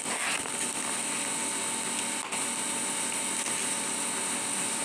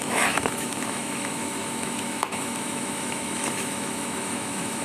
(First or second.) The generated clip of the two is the second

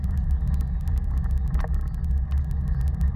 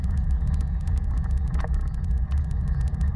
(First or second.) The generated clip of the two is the second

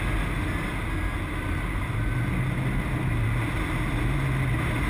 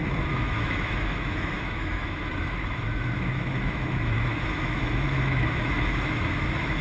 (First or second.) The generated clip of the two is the second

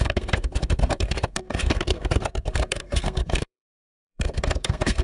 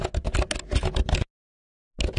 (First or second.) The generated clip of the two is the first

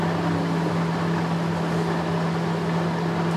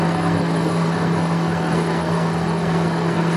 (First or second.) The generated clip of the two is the second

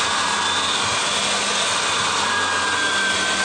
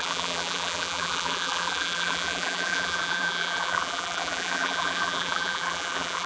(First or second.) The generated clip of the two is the second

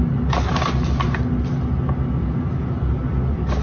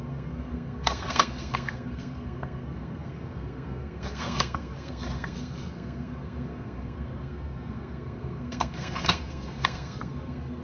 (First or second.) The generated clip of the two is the second